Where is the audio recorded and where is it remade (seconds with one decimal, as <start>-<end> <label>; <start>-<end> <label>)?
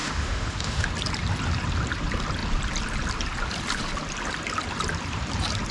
0.0-0.9 remade; 0.9-5.7 recorded